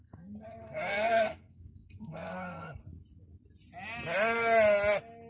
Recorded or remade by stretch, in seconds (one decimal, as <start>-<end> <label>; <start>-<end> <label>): 0.0-2.8 remade; 2.8-5.3 recorded